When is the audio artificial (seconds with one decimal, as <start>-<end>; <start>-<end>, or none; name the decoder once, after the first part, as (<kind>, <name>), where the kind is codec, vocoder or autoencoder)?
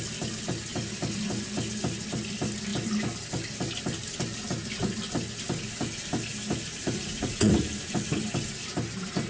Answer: 6.8-7.5 (vocoder, Vocos)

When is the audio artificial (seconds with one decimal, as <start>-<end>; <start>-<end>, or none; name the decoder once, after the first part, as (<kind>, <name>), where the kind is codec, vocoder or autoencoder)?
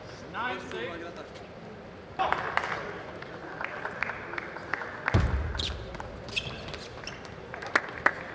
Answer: none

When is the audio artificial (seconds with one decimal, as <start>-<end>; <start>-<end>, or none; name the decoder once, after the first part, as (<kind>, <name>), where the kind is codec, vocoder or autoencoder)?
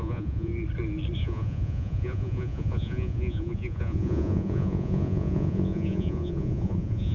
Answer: 0.0-0.5 (vocoder, Vocos); 1.2-7.1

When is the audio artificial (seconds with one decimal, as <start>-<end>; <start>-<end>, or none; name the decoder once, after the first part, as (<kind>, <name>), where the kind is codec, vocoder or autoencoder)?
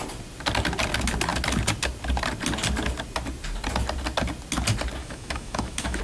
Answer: 5.0-6.0 (autoencoder, DAC-VAE)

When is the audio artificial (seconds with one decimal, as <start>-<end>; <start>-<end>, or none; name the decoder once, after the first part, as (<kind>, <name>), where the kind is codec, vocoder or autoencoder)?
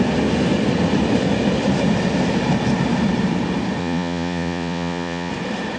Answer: 3.8-5.3 (vocoder, Vocos)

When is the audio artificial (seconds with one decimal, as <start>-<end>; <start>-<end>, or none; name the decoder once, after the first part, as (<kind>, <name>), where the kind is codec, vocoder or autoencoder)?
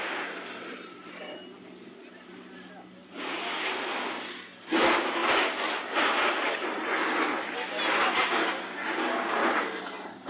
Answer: none